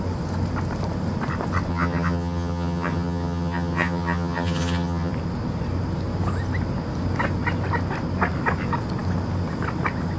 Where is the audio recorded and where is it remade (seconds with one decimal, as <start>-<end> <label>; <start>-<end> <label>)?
0.0-1.7 recorded; 1.7-5.1 remade; 5.1-10.2 recorded